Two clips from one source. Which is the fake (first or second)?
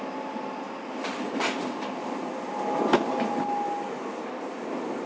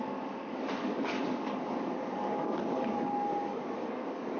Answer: second